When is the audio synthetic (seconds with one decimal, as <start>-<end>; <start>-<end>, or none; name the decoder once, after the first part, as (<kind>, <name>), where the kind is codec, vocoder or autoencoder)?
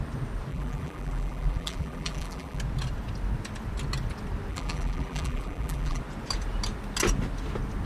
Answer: 0.5-2.6 (vocoder, BigVGAN v2); 4.5-6.0